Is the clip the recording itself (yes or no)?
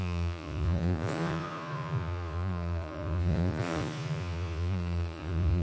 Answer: no